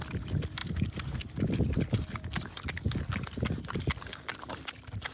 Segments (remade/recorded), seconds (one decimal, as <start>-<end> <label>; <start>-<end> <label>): 0.0-0.6 recorded; 0.6-2.6 remade; 2.6-5.1 recorded